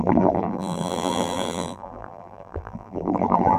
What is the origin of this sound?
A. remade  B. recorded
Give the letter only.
A